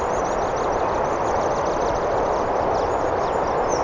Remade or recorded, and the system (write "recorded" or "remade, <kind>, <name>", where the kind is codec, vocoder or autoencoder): recorded